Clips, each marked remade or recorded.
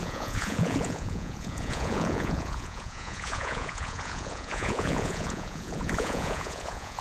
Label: remade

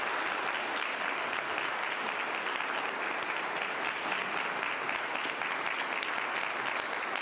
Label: recorded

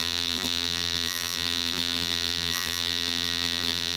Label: remade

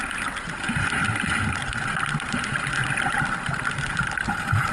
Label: recorded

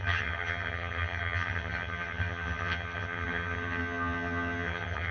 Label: remade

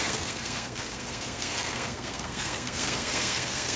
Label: remade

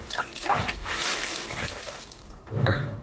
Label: remade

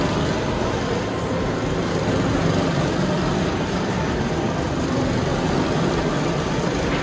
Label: recorded